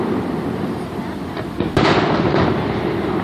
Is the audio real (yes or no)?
no